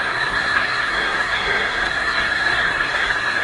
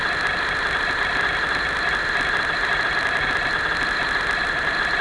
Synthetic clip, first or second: first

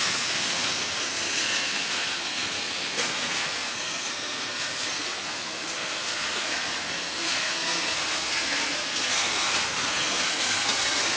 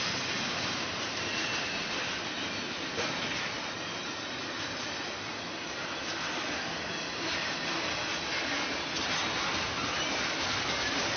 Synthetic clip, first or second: first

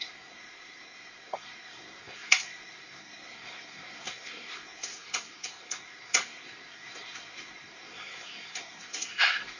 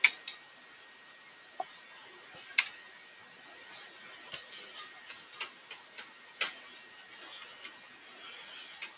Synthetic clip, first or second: first